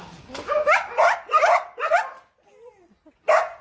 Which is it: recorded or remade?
recorded